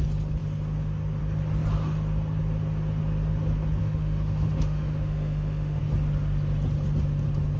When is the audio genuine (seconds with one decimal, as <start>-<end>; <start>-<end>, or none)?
0.0-3.8; 5.8-7.6